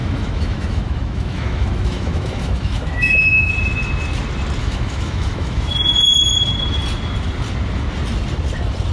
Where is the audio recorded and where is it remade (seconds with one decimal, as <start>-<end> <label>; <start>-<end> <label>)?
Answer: 0.0-3.5 remade; 3.5-4.6 recorded; 4.6-5.7 remade; 5.7-8.9 recorded